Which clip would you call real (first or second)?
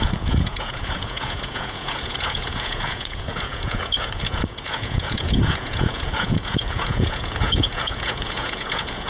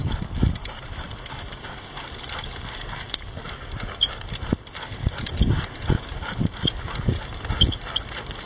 second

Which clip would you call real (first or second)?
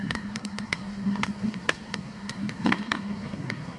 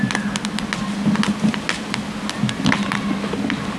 second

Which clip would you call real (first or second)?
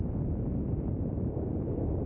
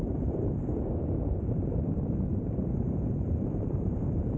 first